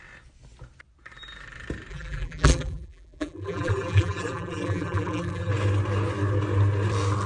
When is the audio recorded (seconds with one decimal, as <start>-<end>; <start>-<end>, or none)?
0.0-1.9; 5.5-7.3